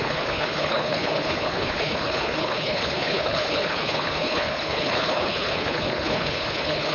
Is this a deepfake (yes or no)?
yes